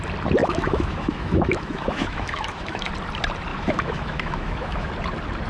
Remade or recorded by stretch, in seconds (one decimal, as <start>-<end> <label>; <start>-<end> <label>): 0.0-0.4 recorded; 0.4-2.9 remade; 2.9-3.5 recorded; 3.5-4.9 remade; 4.9-5.5 recorded